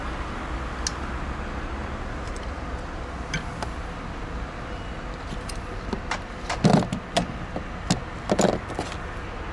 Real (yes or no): yes